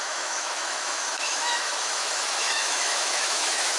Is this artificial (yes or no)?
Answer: yes